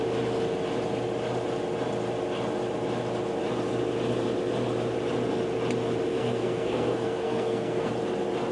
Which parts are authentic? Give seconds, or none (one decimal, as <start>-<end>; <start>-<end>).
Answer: 0.0-6.1; 7.9-8.5